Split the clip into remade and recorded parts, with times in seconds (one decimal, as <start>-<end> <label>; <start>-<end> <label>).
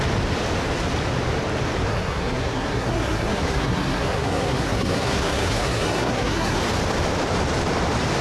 0.0-1.9 recorded; 1.9-6.6 remade; 6.6-8.2 recorded